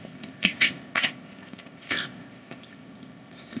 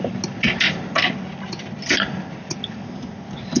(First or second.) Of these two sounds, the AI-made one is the first